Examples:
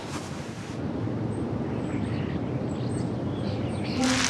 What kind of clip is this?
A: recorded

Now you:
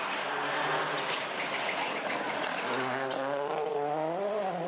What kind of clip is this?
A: recorded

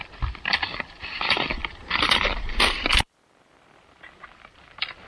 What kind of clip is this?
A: remade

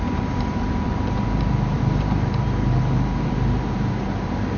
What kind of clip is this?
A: remade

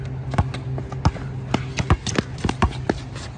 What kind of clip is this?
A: recorded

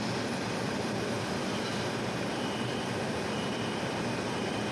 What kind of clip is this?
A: remade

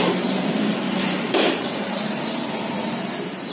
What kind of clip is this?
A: remade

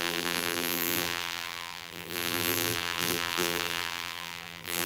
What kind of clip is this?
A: remade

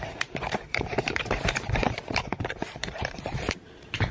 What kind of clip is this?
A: remade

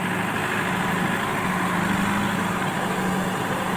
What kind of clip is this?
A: recorded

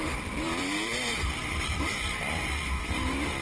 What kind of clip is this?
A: remade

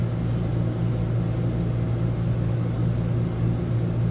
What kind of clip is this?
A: recorded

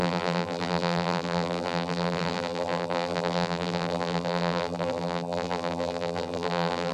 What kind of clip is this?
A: remade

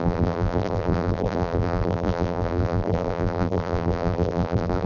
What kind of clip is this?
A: remade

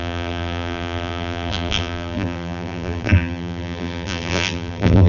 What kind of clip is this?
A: remade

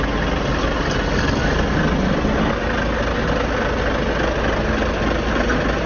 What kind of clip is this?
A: recorded